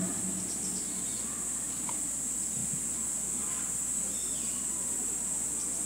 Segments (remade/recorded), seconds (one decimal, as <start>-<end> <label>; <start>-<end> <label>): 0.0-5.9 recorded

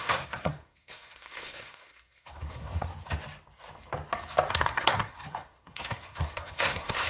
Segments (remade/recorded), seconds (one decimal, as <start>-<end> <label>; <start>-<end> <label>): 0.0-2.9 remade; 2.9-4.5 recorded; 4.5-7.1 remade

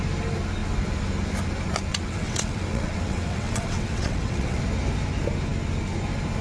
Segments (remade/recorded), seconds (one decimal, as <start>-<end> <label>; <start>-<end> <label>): 0.0-1.9 recorded; 1.9-4.6 remade; 4.6-6.4 recorded